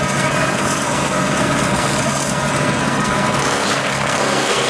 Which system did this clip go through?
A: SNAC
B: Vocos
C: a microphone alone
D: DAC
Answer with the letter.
A